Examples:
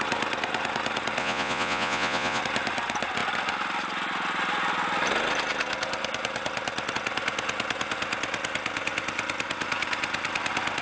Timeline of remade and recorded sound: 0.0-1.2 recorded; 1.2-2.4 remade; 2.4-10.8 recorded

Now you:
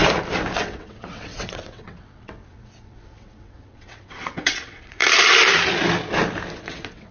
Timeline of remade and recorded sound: 0.0-0.6 recorded; 0.6-5.0 remade; 5.0-6.6 recorded; 6.6-7.1 remade

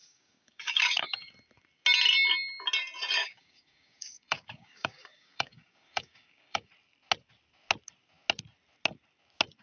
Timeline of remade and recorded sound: 0.0-1.3 remade; 1.3-3.2 recorded; 3.2-6.7 remade; 6.7-9.6 recorded

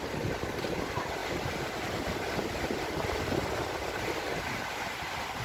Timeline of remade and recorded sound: 0.0-5.4 recorded

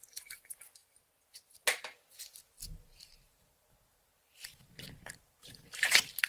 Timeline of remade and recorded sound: 0.0-0.8 remade; 0.8-3.0 recorded; 3.0-6.3 remade